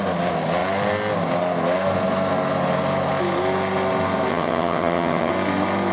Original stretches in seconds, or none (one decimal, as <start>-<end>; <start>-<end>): 0.0-4.3; 5.3-5.9